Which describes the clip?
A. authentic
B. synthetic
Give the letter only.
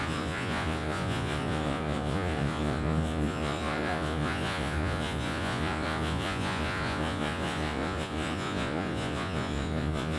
B